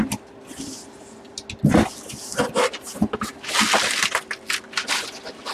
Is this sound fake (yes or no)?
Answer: no